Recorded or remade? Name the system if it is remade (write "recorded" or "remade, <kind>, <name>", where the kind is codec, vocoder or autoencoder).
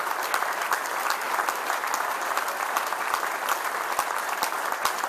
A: recorded